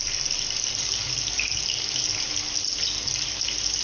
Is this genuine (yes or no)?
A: yes